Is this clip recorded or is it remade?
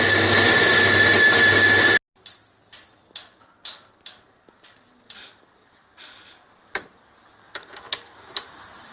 recorded